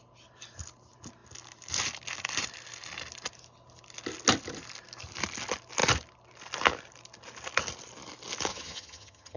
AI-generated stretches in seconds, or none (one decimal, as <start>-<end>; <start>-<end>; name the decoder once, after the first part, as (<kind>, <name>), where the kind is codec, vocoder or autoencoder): 8.5-9.4 (vocoder, HiFi-GAN)

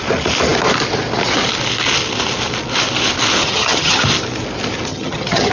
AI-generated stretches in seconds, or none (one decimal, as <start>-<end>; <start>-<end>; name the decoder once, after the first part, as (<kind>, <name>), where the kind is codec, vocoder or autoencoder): 3.4-4.0 (vocoder, HiFi-GAN); 4.9-5.5

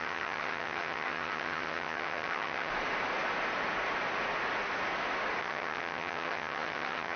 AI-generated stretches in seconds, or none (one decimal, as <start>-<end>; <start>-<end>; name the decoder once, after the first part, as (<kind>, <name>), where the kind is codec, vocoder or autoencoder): 0.0-2.7 (vocoder, HiFi-GAN); 5.4-7.2